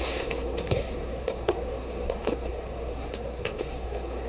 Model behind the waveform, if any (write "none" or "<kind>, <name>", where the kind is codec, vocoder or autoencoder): codec, SNAC